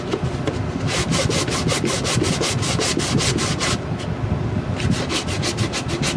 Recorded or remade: recorded